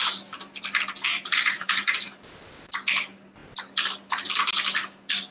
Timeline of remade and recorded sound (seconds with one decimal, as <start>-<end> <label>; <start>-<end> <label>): 0.0-1.1 recorded; 1.1-2.4 remade; 2.4-5.3 recorded